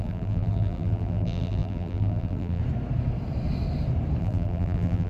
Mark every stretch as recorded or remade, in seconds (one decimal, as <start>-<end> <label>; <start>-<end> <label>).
0.0-2.6 remade; 2.6-4.2 recorded; 4.2-5.1 remade